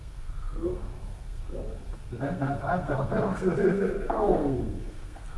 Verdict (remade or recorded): remade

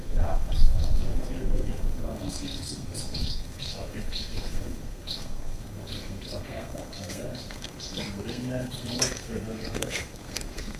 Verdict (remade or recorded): remade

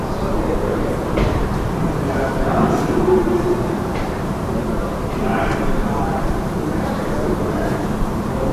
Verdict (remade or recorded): remade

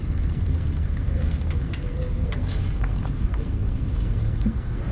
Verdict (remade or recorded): remade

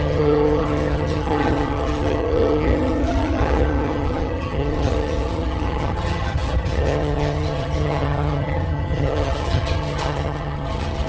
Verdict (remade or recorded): remade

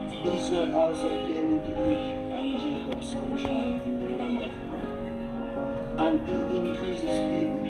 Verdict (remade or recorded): remade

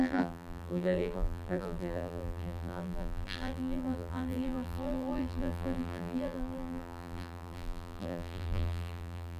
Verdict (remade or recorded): remade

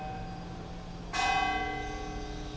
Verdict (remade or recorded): recorded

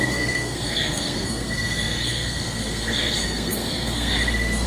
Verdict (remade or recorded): remade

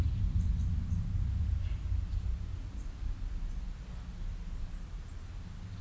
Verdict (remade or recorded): recorded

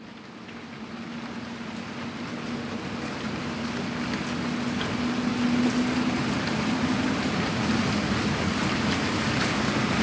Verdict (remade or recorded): recorded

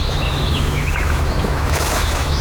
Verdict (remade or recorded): remade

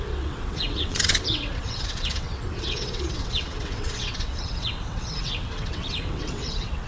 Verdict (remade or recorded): remade